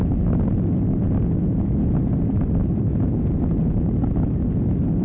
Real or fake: real